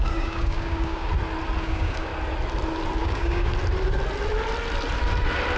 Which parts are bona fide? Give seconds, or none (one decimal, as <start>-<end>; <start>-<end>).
1.1-1.6; 2.1-3.0; 3.5-5.6